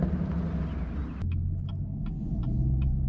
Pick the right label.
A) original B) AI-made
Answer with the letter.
A